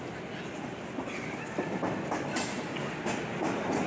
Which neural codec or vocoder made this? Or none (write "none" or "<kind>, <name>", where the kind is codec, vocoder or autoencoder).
none